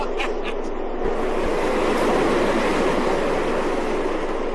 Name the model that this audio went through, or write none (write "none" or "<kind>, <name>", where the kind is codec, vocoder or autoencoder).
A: none